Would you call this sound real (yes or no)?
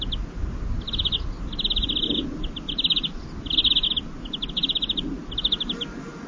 yes